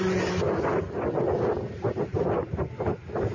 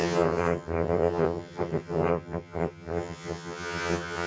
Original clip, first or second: first